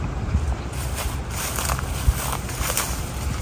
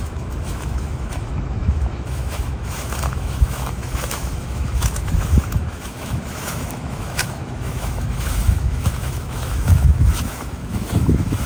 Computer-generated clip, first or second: second